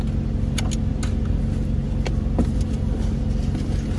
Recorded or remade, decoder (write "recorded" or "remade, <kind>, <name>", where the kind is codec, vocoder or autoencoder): recorded